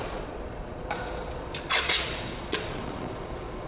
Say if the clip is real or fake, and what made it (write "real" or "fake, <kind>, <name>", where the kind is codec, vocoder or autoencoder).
fake, vocoder, Vocos